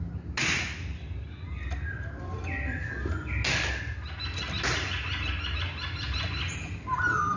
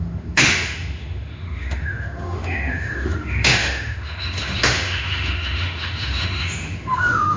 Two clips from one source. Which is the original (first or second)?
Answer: first